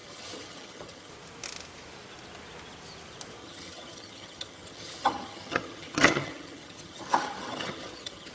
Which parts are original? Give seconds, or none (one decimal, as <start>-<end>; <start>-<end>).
1.1-3.4